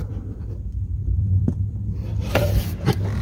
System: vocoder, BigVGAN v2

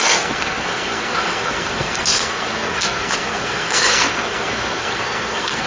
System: codec, SNAC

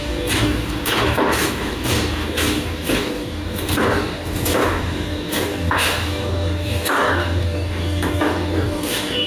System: codec, DAC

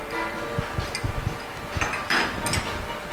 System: none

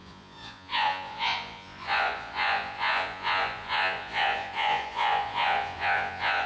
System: vocoder, Vocos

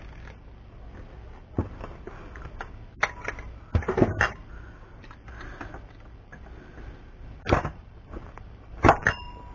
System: none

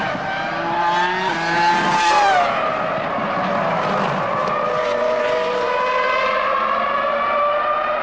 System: none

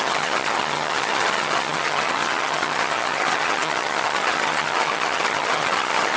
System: vocoder, HiFi-GAN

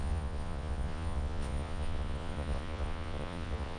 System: vocoder, Vocos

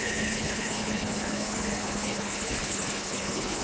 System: codec, HILCodec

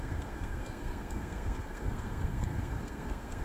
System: codec, SNAC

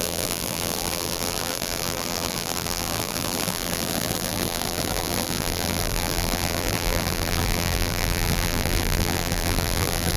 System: vocoder, BigVGAN v2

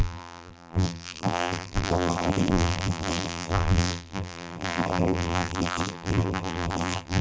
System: vocoder, BigVGAN v2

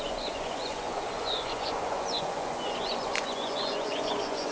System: vocoder, Vocos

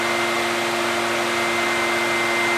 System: none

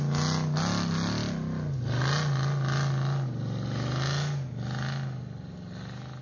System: none